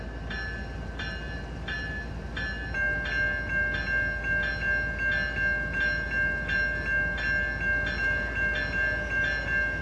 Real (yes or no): yes